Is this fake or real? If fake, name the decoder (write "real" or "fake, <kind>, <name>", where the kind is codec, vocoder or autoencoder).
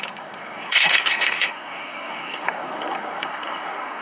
fake, codec, SNAC